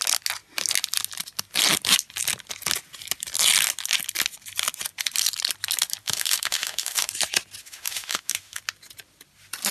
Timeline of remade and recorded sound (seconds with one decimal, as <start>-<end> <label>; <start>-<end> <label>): 0.0-6.0 recorded; 6.0-7.1 remade; 7.1-7.6 recorded; 7.6-8.6 remade; 8.6-9.7 recorded